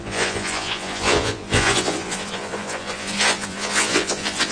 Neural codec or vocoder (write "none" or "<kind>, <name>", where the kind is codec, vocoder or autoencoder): vocoder, Vocos